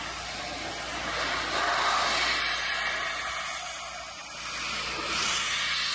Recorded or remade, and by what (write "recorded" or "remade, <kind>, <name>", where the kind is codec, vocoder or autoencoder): recorded